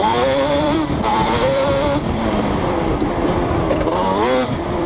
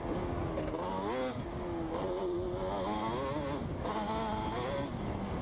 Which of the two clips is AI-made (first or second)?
first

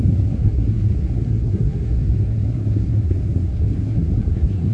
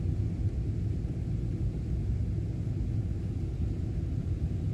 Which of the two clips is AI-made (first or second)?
first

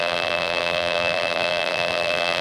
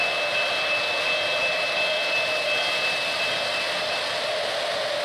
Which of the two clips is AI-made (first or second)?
first